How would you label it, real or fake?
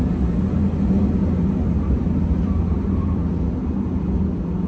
real